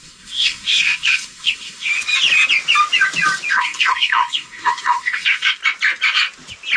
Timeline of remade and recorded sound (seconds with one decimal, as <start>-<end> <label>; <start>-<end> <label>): 0.0-1.9 remade; 1.9-3.5 recorded; 3.5-5.6 remade; 5.6-6.8 recorded